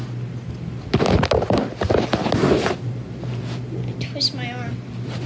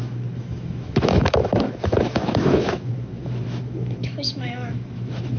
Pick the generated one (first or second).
second